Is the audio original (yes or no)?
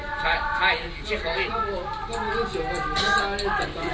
yes